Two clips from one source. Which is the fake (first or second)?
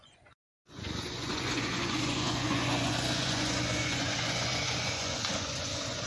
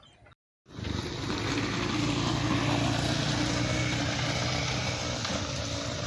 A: first